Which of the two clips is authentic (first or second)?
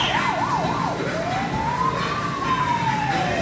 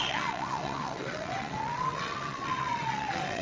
first